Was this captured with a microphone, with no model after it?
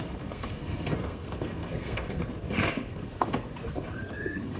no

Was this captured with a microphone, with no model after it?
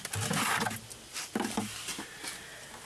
yes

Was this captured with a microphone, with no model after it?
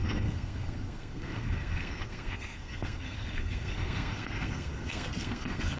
no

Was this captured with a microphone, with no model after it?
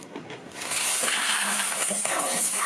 no